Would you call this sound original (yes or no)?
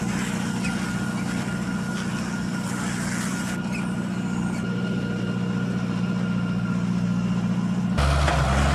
yes